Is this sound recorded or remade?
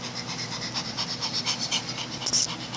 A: recorded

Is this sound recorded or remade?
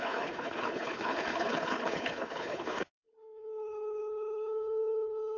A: remade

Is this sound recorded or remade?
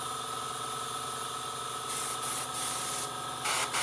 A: recorded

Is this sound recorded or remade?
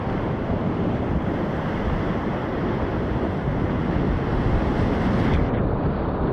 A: recorded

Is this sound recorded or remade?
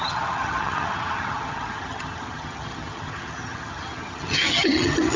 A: remade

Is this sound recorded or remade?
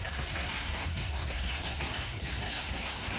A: remade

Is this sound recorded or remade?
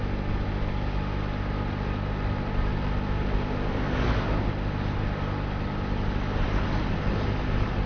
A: recorded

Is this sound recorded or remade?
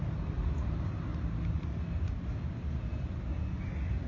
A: recorded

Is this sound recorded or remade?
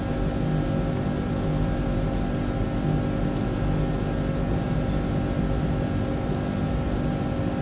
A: recorded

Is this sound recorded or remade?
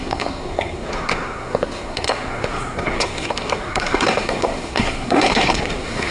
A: remade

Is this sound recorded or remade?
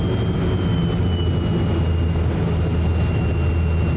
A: recorded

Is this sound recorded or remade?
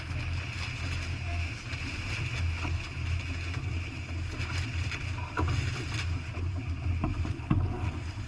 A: recorded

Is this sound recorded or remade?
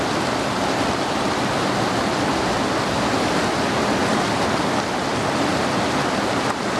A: recorded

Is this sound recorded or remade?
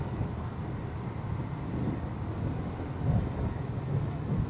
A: recorded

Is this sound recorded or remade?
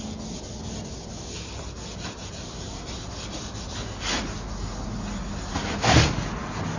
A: recorded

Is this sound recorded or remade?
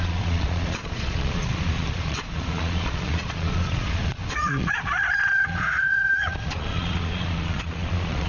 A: remade